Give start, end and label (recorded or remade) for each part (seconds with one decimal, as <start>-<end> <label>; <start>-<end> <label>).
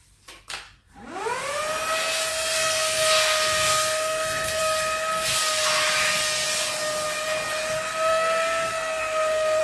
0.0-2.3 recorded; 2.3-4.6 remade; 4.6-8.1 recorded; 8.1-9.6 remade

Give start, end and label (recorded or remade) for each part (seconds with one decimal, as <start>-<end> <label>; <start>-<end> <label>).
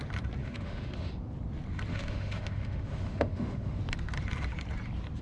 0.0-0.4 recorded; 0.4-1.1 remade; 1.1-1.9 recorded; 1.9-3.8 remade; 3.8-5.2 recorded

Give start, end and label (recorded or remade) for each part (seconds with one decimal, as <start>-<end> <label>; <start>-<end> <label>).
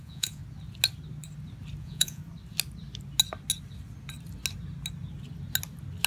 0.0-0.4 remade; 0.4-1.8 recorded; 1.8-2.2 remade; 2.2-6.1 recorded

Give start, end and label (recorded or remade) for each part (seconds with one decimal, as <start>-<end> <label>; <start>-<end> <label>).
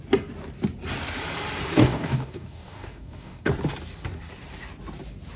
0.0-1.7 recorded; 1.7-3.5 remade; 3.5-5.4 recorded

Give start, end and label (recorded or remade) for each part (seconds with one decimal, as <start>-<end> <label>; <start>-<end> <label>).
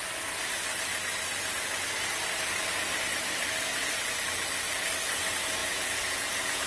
0.0-5.6 recorded; 5.6-6.7 remade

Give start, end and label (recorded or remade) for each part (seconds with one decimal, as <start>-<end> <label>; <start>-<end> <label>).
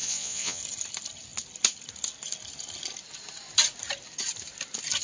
0.0-0.6 remade; 0.6-5.0 recorded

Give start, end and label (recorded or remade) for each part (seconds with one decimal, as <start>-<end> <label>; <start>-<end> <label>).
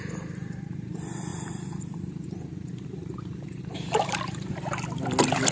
0.0-0.9 remade; 0.9-1.3 recorded; 1.3-4.6 remade; 4.6-5.5 recorded